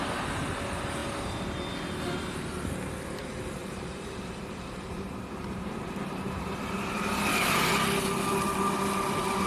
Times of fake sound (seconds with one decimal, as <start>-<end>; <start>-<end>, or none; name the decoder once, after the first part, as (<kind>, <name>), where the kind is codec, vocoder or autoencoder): 3.6-7.7 (vocoder, BigVGAN v2)